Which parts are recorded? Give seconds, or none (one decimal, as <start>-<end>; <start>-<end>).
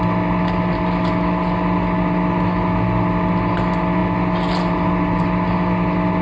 0.0-6.2